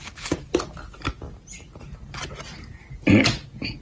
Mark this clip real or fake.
real